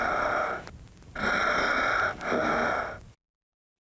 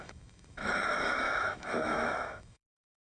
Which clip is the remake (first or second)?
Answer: second